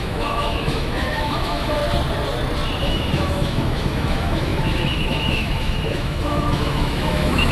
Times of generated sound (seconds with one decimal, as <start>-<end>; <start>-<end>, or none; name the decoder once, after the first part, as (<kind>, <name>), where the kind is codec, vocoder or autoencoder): 0.0-1.8 (autoencoder, DAC-VAE); 2.8-7.5